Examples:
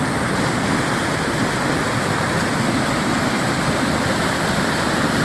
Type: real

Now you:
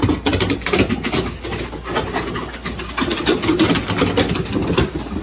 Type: real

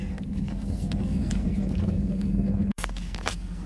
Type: fake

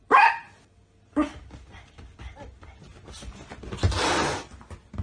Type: real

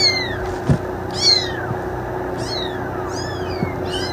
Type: real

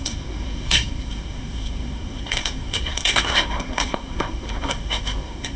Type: fake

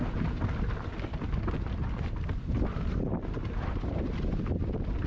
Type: real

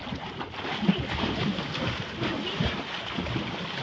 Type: real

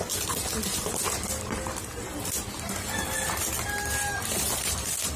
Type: real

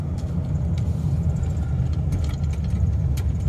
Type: real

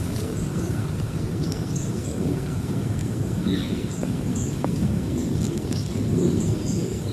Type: fake